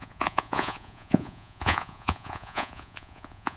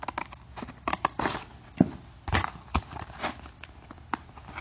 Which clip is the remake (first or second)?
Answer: first